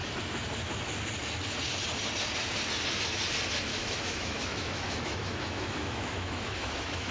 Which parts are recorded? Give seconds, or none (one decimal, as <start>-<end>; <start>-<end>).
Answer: 0.0-3.7